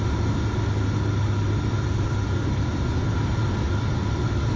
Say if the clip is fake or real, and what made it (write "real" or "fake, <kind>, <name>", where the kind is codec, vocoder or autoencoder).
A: real